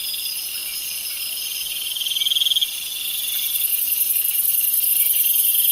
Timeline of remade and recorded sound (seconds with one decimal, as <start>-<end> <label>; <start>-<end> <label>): 0.0-4.9 recorded; 4.9-5.7 remade